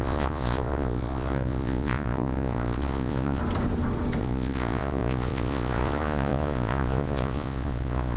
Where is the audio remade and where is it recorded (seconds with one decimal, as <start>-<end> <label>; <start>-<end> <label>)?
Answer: 0.0-3.4 remade; 3.4-4.2 recorded; 4.2-8.2 remade